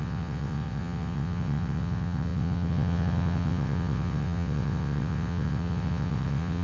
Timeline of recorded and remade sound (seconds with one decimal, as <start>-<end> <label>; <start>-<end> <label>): 0.0-6.6 remade